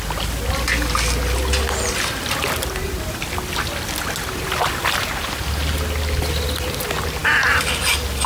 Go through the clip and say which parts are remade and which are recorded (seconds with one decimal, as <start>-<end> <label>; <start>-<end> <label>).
0.0-8.3 recorded